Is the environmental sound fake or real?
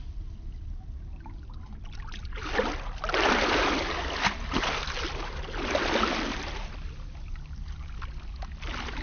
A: real